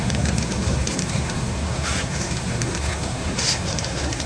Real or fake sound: fake